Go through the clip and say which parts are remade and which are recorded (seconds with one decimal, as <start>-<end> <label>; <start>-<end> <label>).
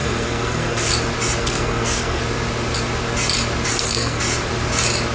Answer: 0.0-0.9 remade; 0.9-1.4 recorded; 1.4-2.2 remade; 2.2-3.7 recorded; 3.7-4.2 remade; 4.2-5.1 recorded